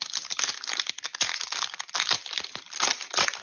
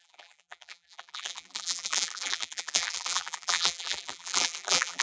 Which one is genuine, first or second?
first